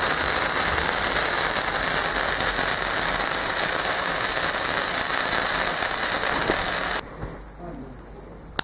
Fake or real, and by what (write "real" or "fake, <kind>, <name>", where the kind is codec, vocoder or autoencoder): real